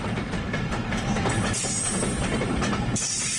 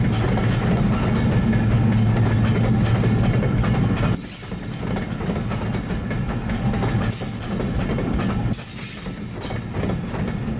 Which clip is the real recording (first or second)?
second